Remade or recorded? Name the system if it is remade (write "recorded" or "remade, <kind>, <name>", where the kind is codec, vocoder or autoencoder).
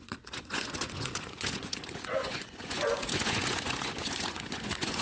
remade, vocoder, Vocos